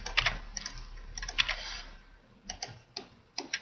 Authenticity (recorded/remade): recorded